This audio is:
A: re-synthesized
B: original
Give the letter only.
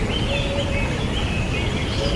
B